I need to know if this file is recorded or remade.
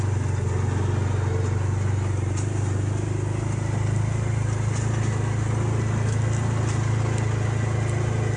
recorded